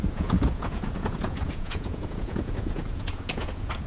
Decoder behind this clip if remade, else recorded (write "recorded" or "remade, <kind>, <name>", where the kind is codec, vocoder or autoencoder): remade, vocoder, Vocos